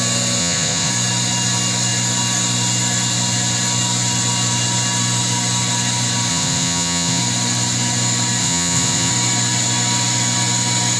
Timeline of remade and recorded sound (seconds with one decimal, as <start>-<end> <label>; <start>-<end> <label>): 0.0-0.4 recorded; 0.4-0.9 remade; 0.9-6.3 recorded; 6.3-7.2 remade; 7.2-8.4 recorded; 8.4-9.1 remade; 9.1-11.0 recorded